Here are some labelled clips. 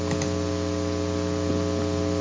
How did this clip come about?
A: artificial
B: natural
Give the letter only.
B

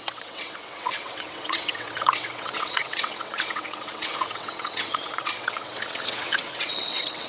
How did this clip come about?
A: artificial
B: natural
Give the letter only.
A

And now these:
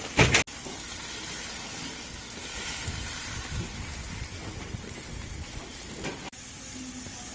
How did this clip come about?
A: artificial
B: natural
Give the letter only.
B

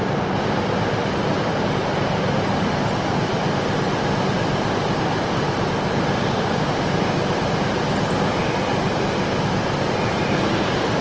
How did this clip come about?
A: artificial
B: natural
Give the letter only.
B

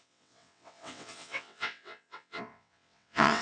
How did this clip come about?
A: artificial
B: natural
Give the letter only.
A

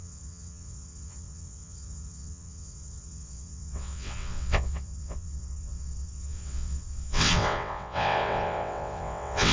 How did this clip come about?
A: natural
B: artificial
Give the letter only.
B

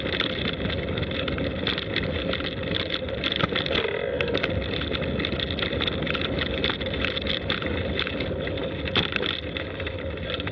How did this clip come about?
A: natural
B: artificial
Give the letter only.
A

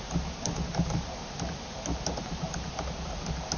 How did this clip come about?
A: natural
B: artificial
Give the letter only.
A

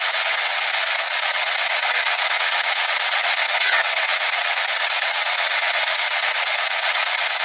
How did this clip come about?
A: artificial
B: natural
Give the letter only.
A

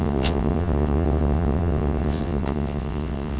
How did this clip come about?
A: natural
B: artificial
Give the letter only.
B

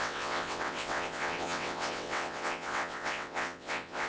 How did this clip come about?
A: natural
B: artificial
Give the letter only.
B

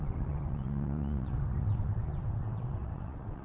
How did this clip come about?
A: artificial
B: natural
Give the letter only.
A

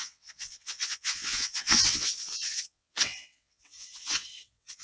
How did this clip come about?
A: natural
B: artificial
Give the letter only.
B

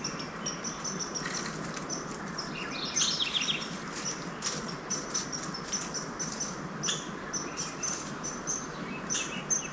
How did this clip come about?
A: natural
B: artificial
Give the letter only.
A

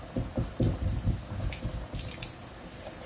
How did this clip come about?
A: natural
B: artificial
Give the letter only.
A